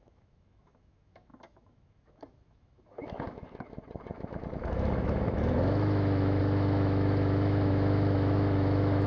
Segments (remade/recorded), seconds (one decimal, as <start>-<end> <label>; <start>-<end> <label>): 0.0-9.1 remade